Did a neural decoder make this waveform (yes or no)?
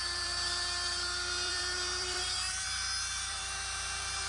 yes